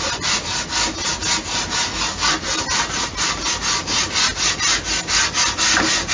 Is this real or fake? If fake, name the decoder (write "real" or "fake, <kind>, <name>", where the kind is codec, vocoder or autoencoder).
real